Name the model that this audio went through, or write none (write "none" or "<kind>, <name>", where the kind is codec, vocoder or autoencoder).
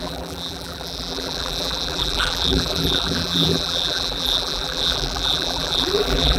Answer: vocoder, BigVGAN v2